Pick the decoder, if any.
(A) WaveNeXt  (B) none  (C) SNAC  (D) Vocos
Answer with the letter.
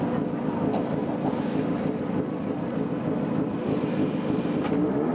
B